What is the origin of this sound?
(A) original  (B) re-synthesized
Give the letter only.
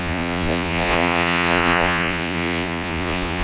B